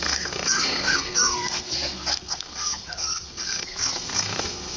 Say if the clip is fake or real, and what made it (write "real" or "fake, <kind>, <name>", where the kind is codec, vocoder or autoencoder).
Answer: fake, codec, SNAC